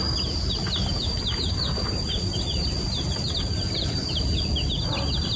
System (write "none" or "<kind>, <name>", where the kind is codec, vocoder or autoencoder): none